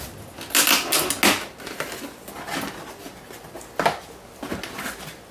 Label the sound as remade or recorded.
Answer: recorded